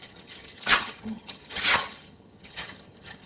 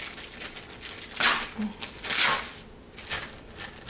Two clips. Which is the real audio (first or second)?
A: second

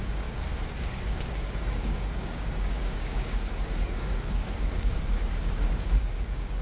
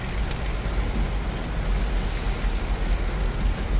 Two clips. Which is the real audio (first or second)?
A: second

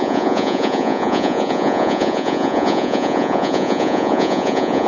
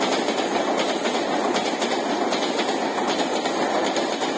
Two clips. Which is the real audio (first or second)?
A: second